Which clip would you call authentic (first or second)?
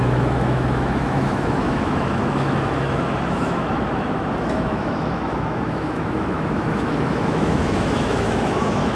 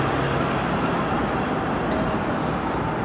second